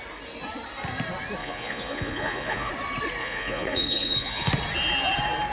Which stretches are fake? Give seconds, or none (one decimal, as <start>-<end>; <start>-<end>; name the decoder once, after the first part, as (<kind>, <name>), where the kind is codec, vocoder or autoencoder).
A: 1.4-2.7 (vocoder, Vocos); 3.2-4.5